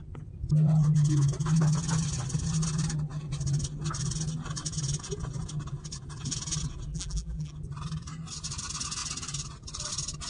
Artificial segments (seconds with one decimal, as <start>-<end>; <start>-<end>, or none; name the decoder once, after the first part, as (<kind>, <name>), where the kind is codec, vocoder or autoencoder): 6.9-7.5 (vocoder, BigVGAN v2)